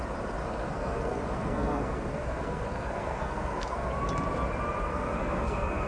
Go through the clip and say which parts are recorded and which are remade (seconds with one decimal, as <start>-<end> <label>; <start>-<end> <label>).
0.0-0.4 recorded; 0.4-3.9 remade; 3.9-4.9 recorded; 4.9-5.9 remade